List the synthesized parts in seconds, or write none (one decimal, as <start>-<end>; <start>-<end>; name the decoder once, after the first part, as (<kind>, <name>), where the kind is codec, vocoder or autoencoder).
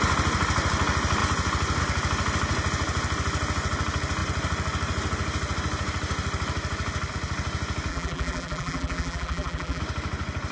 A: 7.9-9.8 (vocoder, BigVGAN v2)